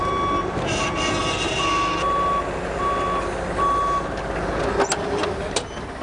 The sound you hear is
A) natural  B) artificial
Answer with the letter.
A